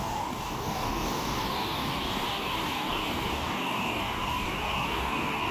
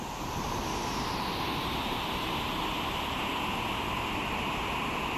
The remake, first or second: first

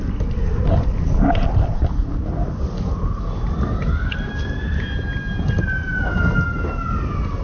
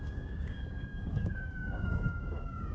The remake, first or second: second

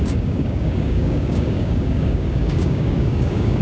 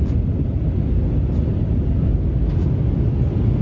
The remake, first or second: first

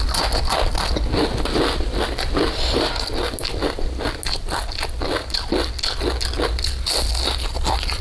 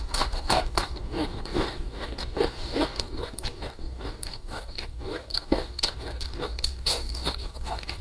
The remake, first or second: second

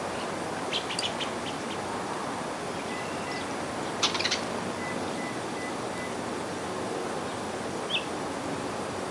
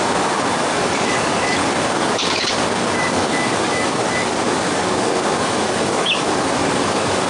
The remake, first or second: second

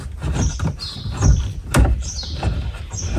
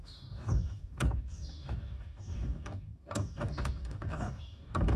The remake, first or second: second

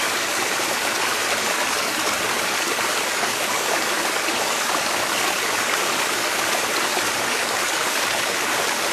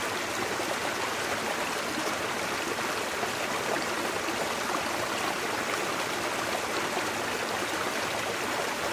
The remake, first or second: first